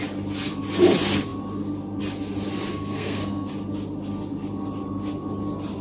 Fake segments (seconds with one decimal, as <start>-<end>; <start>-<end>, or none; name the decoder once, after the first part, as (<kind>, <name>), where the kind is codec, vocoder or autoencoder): 2.7-3.5 (codec, SNAC)